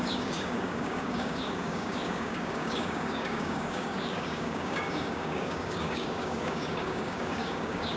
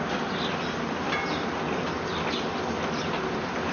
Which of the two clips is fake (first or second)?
first